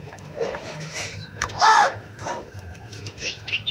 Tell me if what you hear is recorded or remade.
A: remade